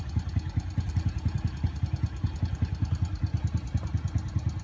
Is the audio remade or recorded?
recorded